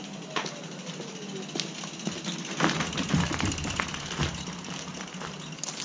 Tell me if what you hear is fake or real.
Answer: real